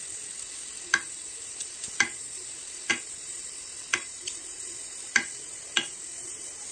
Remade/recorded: recorded